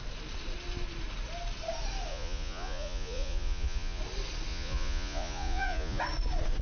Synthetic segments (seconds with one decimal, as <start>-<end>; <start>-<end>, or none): 2.1-4.0; 4.5-6.0